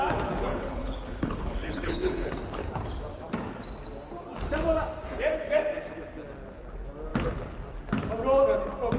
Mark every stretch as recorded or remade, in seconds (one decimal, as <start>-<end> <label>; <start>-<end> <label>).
0.0-0.5 recorded; 0.5-2.3 remade; 2.3-9.0 recorded